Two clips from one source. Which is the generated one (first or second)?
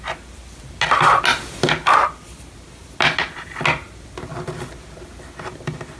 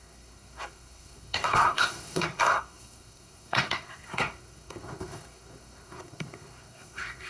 second